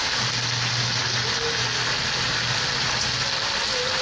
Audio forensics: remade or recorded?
recorded